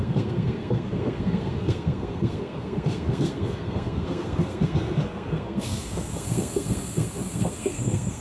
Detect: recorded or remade remade